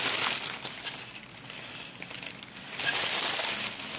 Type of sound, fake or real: real